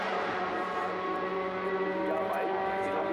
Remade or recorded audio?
recorded